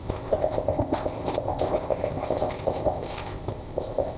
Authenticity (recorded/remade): remade